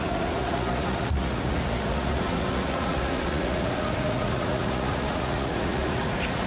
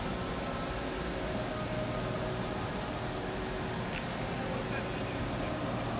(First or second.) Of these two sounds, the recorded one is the second